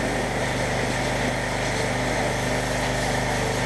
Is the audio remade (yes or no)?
no